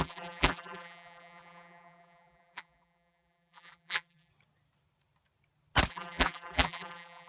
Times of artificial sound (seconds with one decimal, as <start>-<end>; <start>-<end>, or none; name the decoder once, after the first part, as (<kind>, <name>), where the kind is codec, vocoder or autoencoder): 0.0-4.3 (vocoder, BigVGAN v2); 5.9-7.3